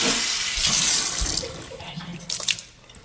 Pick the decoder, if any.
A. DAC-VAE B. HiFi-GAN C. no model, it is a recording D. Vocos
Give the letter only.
C